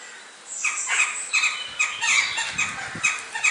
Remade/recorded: recorded